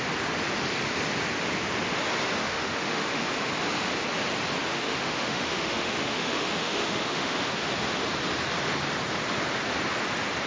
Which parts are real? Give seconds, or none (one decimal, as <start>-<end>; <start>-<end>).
0.0-2.4; 3.5-4.7; 7.4-10.5